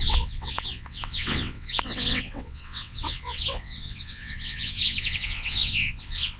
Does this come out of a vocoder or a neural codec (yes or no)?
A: yes